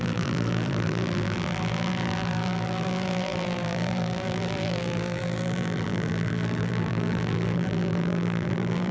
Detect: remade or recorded remade